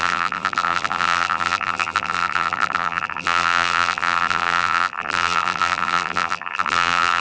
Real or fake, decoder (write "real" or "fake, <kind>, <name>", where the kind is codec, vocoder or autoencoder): fake, vocoder, BigVGAN v2